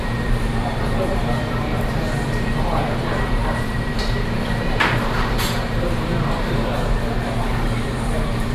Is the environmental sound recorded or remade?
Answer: remade